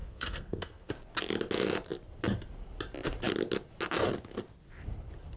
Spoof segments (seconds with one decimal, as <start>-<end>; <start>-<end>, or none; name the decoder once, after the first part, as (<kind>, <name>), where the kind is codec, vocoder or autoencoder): 0.0-0.9 (codec, SNAC)